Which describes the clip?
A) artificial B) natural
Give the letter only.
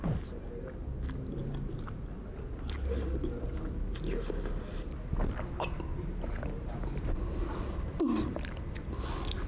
B